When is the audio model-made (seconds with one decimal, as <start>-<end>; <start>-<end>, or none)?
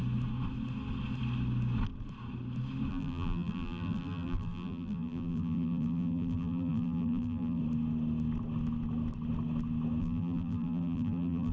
2.9-7.6; 10.0-11.5